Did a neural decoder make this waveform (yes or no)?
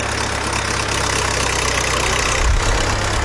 no